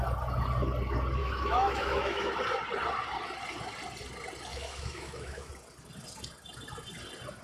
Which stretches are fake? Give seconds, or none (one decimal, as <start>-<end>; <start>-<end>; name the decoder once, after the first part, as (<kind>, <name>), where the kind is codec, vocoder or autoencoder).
1.2-2.3 (autoencoder, DAC-VAE); 4.5-5.5